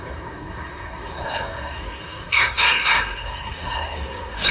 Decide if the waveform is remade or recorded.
remade